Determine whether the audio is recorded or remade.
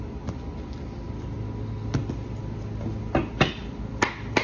recorded